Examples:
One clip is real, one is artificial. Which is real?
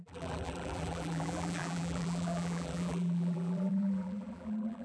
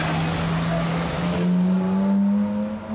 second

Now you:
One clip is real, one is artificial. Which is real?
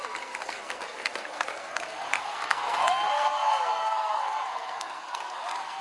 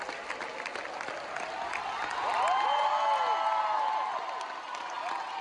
second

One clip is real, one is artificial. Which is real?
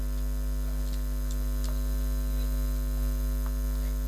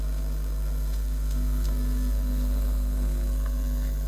first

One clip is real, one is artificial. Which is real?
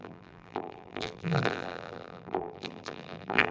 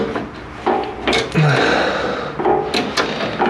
second